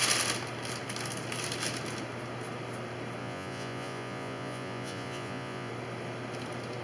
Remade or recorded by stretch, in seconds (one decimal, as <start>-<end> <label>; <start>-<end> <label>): 0.0-3.2 recorded; 3.2-5.7 remade; 5.7-6.8 recorded